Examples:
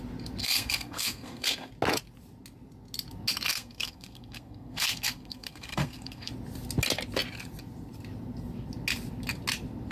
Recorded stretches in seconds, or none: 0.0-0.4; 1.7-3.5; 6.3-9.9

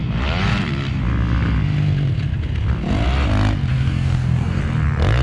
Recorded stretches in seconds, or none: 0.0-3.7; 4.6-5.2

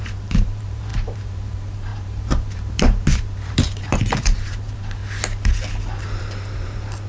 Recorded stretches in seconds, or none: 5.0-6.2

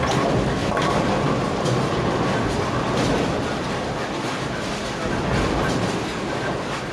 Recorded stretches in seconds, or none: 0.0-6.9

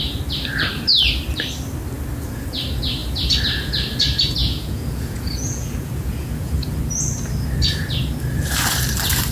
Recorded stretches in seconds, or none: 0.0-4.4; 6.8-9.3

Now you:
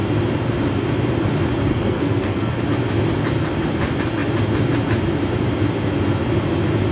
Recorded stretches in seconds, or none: 0.0-1.7; 2.6-6.9